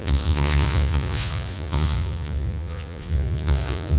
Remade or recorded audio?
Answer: remade